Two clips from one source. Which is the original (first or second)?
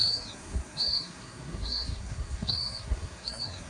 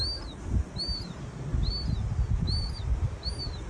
second